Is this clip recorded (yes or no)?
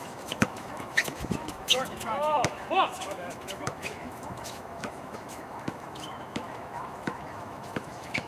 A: no